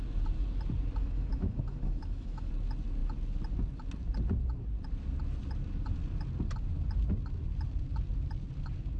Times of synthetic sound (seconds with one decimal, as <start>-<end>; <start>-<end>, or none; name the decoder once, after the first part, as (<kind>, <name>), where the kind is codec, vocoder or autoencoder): 1.0-2.5 (autoencoder, DAC-VAE)